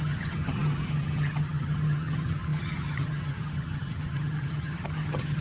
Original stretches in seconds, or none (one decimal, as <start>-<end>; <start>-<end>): none